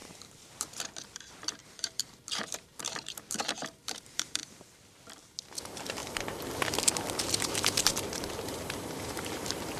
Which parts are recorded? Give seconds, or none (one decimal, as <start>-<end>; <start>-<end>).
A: 4.4-5.6; 6.0-7.1